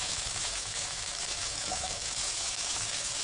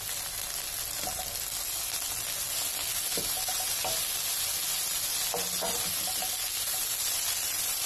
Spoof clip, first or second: first